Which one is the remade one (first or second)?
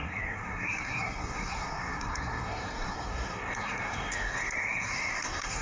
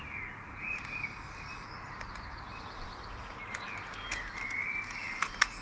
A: first